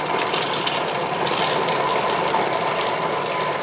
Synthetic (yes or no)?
yes